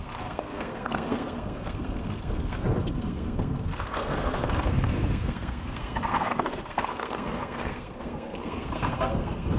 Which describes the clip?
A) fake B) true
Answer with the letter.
A